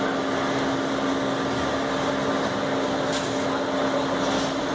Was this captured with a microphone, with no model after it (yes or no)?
yes